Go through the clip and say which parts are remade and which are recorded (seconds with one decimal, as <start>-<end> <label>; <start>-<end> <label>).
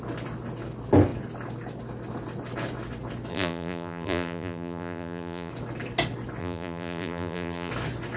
0.0-3.3 recorded; 3.3-5.5 remade; 5.5-6.4 recorded; 6.4-7.7 remade; 7.7-8.2 recorded